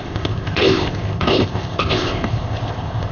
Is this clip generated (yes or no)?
yes